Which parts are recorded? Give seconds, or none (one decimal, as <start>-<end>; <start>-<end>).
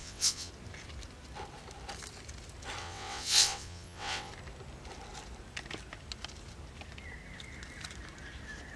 0.5-2.8; 4.3-8.8